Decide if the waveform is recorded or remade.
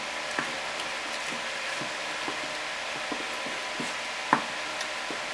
recorded